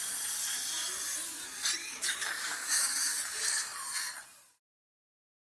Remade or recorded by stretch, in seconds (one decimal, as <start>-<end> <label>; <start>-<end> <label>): 0.0-1.8 recorded; 1.8-3.1 remade; 3.1-5.4 recorded